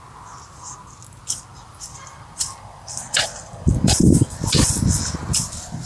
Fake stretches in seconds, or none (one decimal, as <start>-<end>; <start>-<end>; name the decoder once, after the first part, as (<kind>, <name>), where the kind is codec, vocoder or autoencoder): 1.5-4.8 (vocoder, BigVGAN v2)